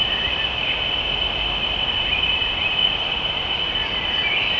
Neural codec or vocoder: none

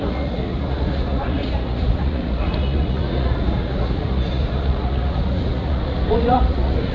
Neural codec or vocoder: vocoder, Vocos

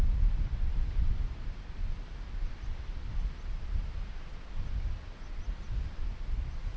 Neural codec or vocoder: none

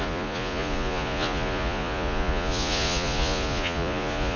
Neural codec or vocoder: vocoder, Vocos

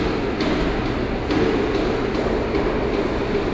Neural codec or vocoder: none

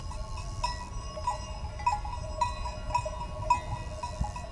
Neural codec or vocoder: none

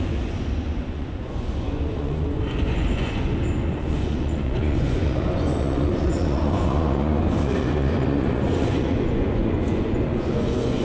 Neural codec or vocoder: vocoder, Vocos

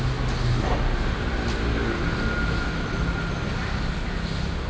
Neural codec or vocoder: none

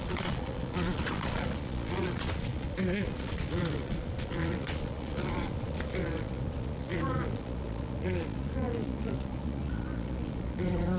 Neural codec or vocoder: vocoder, Vocos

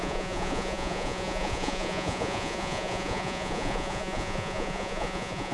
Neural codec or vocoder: vocoder, Vocos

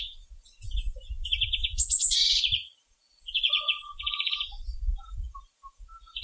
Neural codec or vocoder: vocoder, Vocos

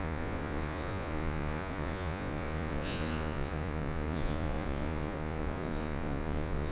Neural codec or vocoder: vocoder, Vocos